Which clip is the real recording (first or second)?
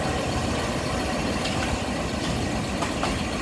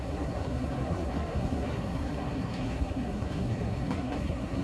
first